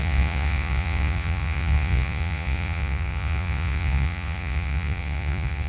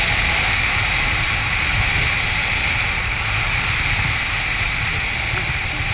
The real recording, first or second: second